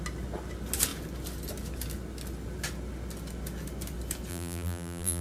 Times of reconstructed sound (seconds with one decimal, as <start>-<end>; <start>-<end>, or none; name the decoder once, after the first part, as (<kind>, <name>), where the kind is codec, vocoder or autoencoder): 4.3-5.2 (vocoder, BigVGAN v2)